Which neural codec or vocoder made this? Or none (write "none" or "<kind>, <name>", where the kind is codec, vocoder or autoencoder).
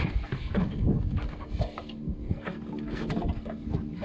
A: codec, SNAC